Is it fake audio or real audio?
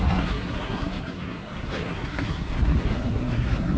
fake